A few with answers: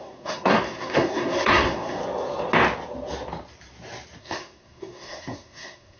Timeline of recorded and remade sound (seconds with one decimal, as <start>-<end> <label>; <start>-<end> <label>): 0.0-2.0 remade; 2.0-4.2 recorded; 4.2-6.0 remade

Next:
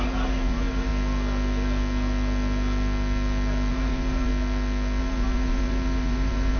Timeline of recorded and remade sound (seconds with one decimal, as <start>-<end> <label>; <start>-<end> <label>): 0.0-0.9 remade; 0.9-3.7 recorded; 3.7-4.3 remade; 4.3-5.0 recorded; 5.0-6.6 remade

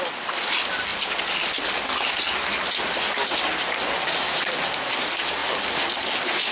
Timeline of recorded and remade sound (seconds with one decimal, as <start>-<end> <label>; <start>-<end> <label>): 0.0-6.5 recorded

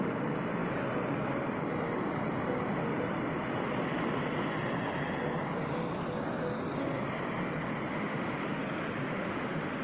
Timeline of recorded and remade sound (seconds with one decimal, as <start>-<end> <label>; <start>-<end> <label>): 0.0-7.9 recorded; 7.9-8.6 remade; 8.6-9.0 recorded; 9.0-9.8 remade